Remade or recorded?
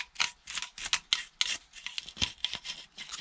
recorded